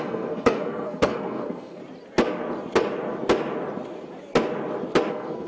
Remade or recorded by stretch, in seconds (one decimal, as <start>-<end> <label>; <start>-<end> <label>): 0.0-1.8 remade; 1.8-5.1 recorded; 5.1-5.5 remade